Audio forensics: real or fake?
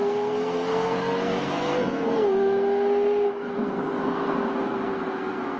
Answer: fake